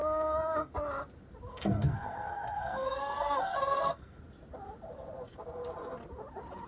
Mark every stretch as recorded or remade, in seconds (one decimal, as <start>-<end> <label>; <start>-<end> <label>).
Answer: 0.0-0.7 remade; 0.7-1.5 recorded; 1.5-4.2 remade; 4.2-6.7 recorded